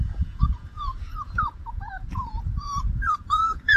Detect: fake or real fake